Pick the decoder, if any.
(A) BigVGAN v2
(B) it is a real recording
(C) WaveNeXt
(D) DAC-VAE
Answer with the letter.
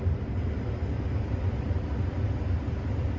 A